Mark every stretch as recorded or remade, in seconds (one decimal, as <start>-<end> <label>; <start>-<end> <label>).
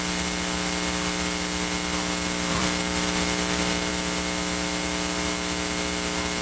0.0-2.5 recorded; 2.5-3.9 remade; 3.9-6.4 recorded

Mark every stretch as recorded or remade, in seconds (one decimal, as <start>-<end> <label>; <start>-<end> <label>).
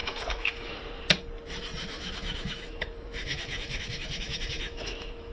0.0-0.8 remade; 0.8-1.8 recorded; 1.8-5.3 remade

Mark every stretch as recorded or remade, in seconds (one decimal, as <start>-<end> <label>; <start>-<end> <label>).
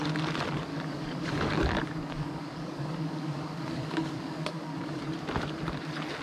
0.0-0.7 recorded; 0.7-1.5 remade; 1.5-2.0 recorded; 2.0-5.0 remade; 5.0-6.2 recorded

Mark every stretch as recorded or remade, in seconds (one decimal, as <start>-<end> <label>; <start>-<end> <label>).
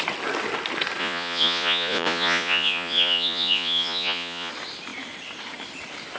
0.0-1.0 recorded; 1.0-4.5 remade; 4.5-6.2 recorded